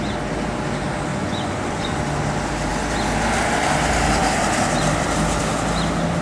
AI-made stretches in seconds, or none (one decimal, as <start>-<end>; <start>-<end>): 1.1-2.0